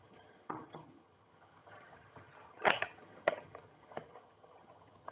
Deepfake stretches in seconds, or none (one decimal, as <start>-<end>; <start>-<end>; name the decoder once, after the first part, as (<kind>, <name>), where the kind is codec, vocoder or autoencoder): 0.0-5.1 (vocoder, HiFi-GAN)